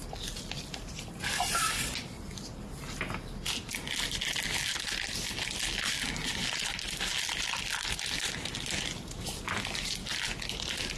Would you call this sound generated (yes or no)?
no